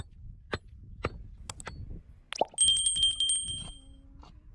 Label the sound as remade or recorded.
recorded